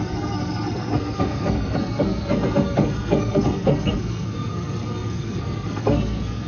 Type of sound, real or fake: fake